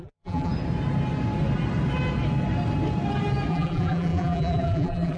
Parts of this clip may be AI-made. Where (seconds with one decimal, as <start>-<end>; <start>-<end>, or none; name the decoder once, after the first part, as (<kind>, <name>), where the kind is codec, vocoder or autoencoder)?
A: 0.0-0.5 (vocoder, BigVGAN v2); 3.5-5.2